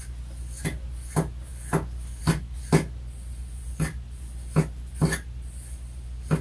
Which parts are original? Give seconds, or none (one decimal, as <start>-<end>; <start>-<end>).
0.0-6.4